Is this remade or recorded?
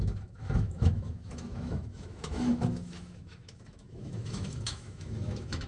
remade